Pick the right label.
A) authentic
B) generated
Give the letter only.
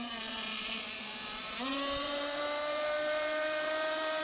B